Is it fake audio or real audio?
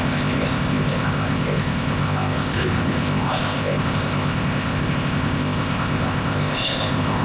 fake